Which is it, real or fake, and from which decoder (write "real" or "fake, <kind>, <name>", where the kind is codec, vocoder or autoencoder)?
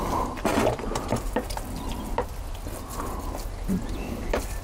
real